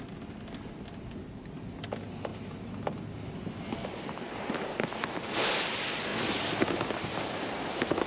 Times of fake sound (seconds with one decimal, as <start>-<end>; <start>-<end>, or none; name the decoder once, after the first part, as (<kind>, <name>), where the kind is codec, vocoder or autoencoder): none